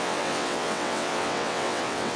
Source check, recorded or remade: remade